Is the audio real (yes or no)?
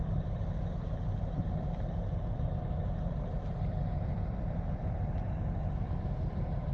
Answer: no